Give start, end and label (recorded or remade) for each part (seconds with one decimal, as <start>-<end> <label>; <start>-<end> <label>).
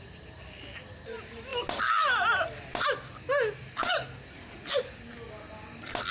0.0-6.1 recorded